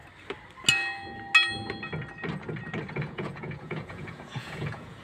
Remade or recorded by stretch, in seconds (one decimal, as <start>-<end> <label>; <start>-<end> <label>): 0.0-3.0 recorded; 3.0-5.0 remade